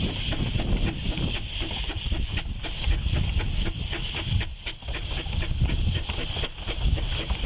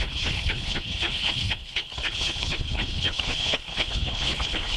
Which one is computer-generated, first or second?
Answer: second